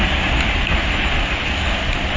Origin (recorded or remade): recorded